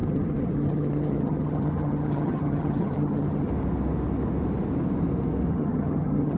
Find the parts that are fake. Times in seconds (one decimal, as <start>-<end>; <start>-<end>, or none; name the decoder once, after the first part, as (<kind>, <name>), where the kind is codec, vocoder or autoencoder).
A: 0.0-3.5 (vocoder, HiFi-GAN); 5.5-6.4